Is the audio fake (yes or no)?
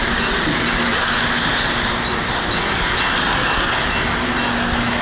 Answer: no